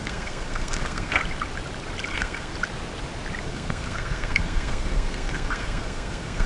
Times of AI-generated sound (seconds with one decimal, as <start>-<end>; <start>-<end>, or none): 0.0-1.2; 2.1-2.5; 3.4-6.5